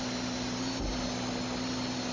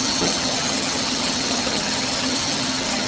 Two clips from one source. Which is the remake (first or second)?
second